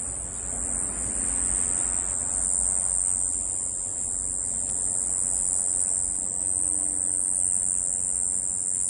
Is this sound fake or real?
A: real